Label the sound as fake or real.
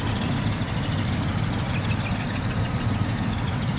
real